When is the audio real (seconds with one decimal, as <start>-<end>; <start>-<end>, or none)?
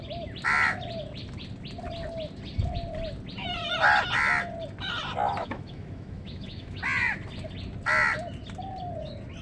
0.0-5.4; 6.8-9.4